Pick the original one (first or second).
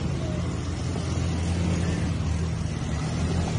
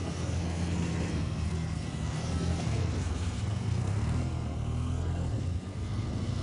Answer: first